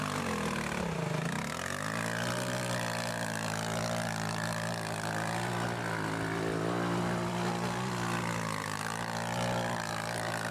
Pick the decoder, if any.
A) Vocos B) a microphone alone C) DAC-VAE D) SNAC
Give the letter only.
B